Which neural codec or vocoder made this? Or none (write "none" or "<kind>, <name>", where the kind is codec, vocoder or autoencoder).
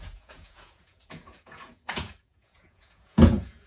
vocoder, Vocos